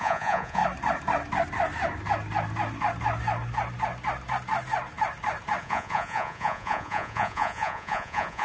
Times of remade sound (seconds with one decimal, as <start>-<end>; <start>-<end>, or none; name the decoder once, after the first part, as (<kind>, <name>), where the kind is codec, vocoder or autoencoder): 0.0-0.6 (vocoder, Vocos); 5.6-8.4